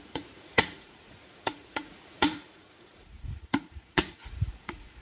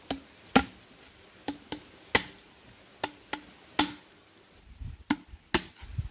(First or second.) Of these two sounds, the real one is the second